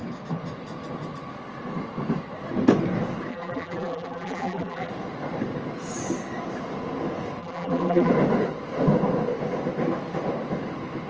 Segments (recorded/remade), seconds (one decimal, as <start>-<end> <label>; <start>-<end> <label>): 0.0-3.3 recorded; 3.3-4.9 remade; 4.9-7.4 recorded; 7.4-8.1 remade; 8.1-11.1 recorded